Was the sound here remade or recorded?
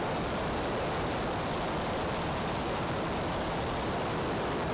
recorded